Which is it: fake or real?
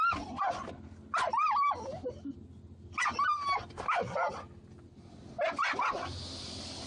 real